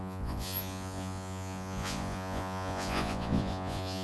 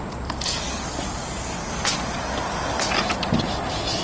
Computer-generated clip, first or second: first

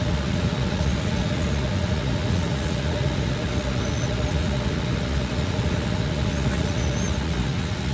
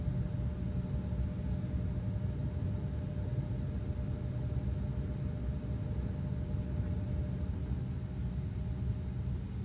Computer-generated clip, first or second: first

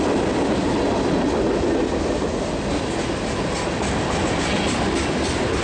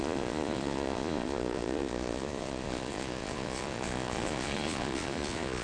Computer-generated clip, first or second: second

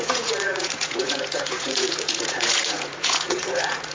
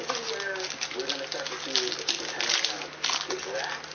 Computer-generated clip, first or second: first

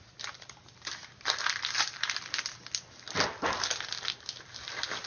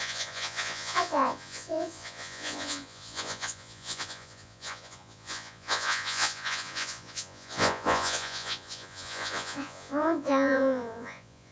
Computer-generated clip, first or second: second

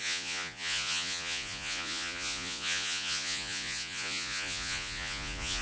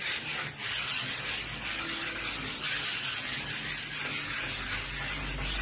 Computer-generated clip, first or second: first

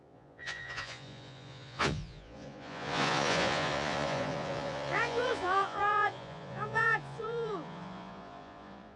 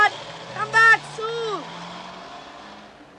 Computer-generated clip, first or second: first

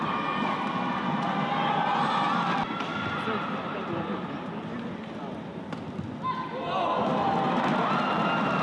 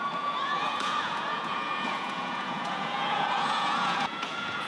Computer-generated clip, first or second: second